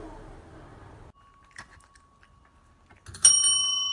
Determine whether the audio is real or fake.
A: real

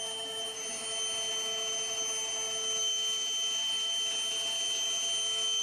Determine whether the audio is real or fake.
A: real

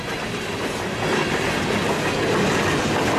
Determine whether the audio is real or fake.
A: real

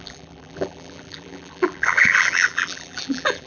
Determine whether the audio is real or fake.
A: fake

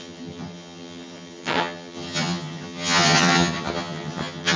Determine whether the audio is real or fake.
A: fake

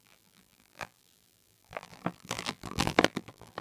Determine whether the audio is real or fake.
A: fake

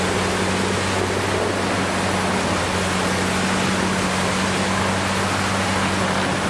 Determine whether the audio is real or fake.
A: real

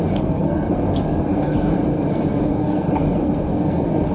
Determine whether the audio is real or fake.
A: fake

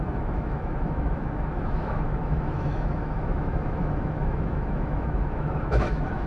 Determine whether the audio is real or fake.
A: fake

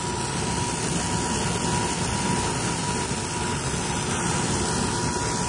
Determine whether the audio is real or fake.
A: real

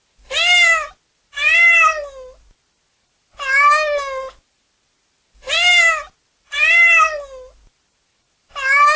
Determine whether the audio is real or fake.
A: real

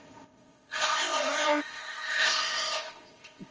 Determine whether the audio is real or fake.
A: fake